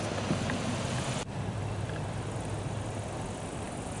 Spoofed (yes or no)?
no